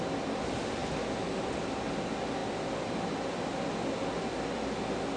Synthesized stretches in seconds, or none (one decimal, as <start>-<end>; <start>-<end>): none